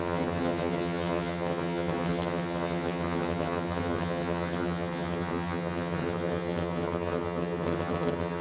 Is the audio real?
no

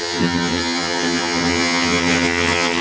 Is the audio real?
no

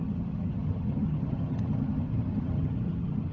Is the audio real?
no